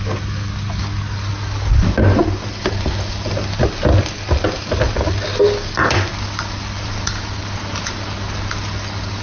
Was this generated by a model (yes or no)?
no